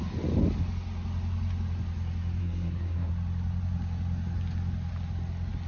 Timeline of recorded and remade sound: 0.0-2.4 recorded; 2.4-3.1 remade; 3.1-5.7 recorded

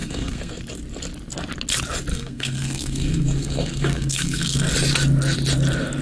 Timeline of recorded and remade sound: 0.0-0.6 remade; 0.6-2.1 recorded; 2.1-4.7 remade; 4.7-6.0 recorded

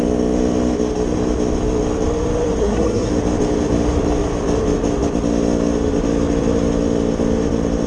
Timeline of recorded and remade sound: 0.0-2.6 recorded; 2.6-3.1 remade; 3.1-7.9 recorded